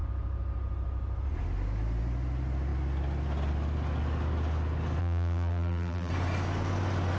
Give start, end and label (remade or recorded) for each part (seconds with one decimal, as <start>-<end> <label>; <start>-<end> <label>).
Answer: 0.0-5.0 recorded; 5.0-6.1 remade; 6.1-7.2 recorded